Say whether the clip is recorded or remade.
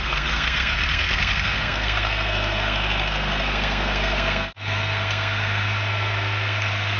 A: remade